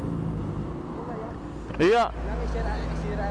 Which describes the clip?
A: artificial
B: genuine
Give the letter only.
B